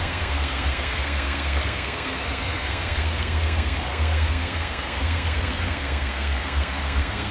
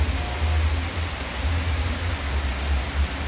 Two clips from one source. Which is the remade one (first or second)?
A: first